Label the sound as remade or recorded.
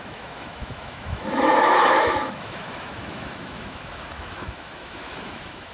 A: remade